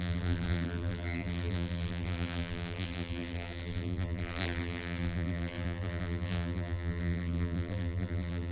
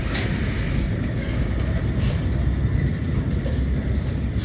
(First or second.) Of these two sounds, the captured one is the second